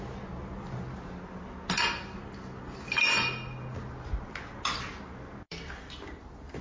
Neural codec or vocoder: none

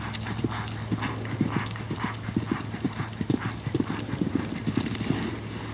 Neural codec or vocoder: none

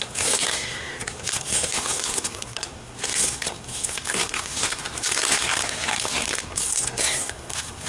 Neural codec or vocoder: codec, SNAC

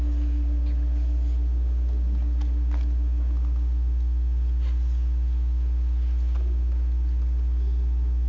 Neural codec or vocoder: none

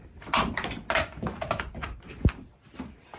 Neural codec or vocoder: none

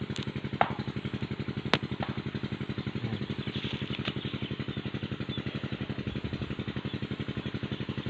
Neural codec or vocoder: none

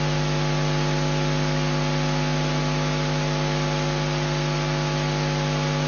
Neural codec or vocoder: none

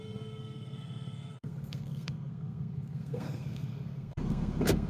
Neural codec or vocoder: codec, SNAC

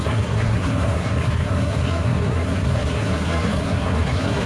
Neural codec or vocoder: codec, SNAC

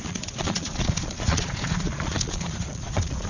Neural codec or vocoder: vocoder, Vocos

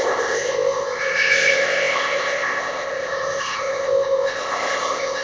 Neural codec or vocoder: codec, ZipCodec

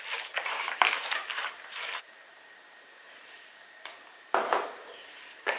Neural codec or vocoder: vocoder, BigVGAN v2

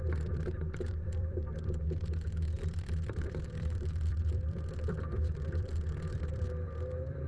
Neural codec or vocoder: vocoder, BigVGAN v2